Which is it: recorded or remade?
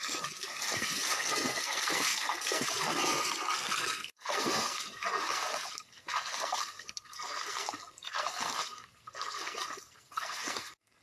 remade